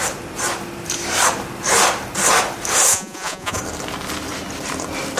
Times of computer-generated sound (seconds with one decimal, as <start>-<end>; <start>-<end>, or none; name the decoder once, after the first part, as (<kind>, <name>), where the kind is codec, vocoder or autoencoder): 2.9-3.6 (vocoder, Vocos)